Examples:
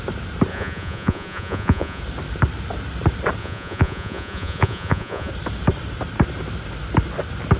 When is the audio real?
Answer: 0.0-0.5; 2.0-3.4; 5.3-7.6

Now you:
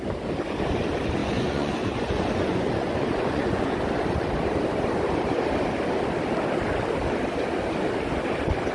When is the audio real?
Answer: 0.0-1.2; 3.8-8.7

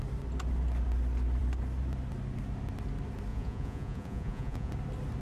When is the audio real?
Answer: 0.0-3.3; 4.7-5.2

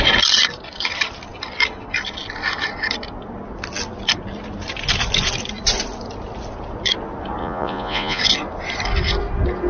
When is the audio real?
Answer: 0.0-7.4; 8.2-9.7